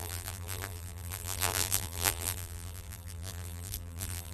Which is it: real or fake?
fake